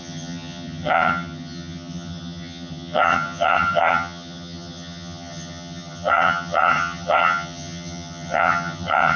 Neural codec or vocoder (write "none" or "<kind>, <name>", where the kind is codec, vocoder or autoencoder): vocoder, HiFi-GAN